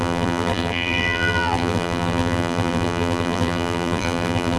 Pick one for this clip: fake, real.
fake